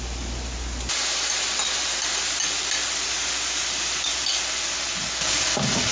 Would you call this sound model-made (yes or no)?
no